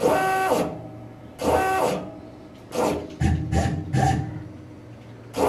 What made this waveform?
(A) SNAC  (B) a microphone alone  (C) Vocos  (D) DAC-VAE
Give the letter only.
B